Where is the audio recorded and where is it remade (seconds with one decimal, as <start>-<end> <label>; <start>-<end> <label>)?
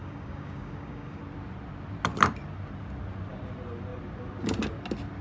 0.0-1.2 remade; 1.2-5.2 recorded